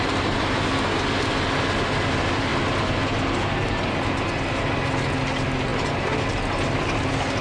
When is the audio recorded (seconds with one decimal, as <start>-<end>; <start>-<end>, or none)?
0.0-7.4